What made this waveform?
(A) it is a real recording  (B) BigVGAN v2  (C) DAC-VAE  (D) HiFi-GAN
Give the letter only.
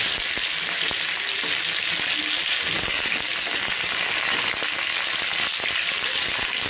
A